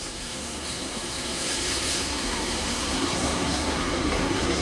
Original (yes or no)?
no